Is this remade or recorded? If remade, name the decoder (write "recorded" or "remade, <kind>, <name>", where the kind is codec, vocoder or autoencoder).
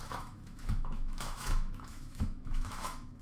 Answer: remade, autoencoder, DAC-VAE